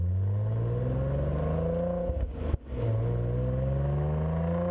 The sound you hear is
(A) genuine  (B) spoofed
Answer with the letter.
A